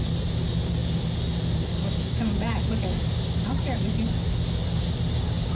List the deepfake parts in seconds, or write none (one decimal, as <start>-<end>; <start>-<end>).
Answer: none